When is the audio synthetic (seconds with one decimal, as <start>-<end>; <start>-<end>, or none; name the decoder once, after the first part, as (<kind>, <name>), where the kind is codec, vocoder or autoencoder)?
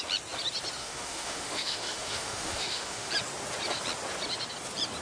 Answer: 0.8-3.1 (autoencoder, DAC-VAE)